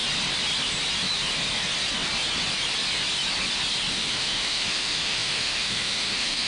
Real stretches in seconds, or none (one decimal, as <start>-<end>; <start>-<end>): 0.0-3.9